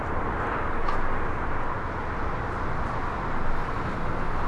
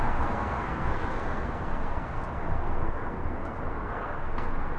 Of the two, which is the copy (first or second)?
second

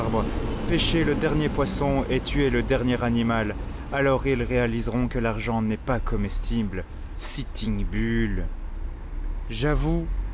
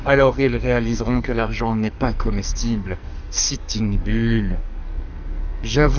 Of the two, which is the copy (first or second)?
second